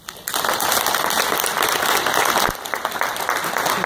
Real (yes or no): no